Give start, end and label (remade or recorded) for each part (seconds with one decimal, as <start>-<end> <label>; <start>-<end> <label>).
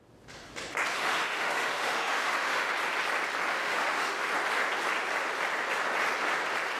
0.0-0.9 recorded; 0.9-2.7 remade; 2.7-3.5 recorded; 3.5-4.3 remade; 4.3-6.8 recorded